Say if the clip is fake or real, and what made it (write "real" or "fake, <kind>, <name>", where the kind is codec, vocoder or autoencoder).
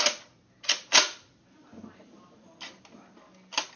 real